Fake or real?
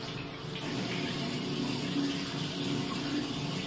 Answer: real